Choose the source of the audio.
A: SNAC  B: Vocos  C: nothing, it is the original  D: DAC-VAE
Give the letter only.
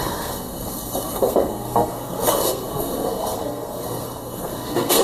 A